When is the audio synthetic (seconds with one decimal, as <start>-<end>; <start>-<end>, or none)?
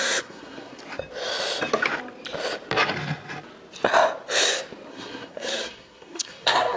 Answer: 0.0-0.8; 4.9-6.8